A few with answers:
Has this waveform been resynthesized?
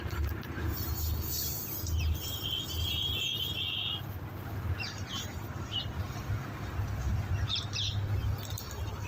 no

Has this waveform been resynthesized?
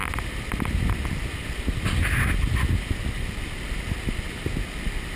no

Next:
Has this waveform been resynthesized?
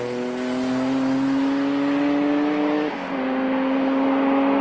no